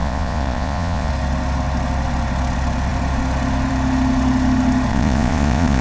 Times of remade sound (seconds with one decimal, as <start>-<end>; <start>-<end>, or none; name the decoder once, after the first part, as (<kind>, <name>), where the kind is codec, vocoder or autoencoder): 0.0-1.1 (vocoder, Vocos); 4.9-5.8